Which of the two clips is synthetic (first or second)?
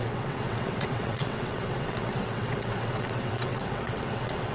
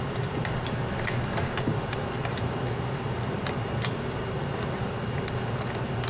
first